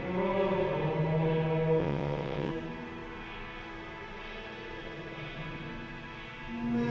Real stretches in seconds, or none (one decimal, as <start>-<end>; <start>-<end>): 0.0-1.8; 2.5-6.9